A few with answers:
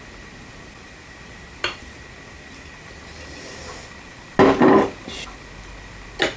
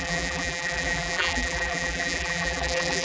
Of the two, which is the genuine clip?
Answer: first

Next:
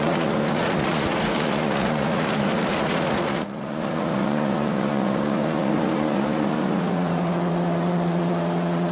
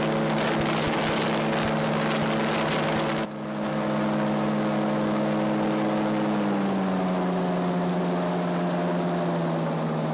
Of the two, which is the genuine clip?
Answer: second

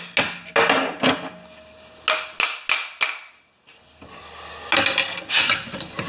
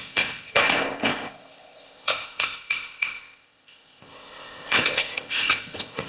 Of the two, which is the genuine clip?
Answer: first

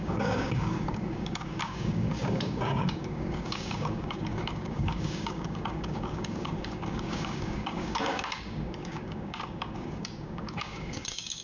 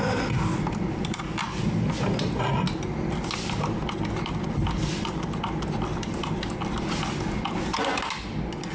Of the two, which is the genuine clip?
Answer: second